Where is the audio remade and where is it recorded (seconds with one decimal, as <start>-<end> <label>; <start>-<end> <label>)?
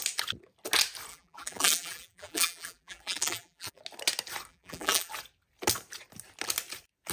0.0-1.1 recorded; 1.1-3.8 remade; 3.8-4.5 recorded; 4.5-5.1 remade; 5.1-7.1 recorded